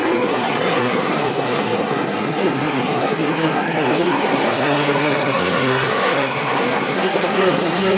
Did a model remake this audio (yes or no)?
yes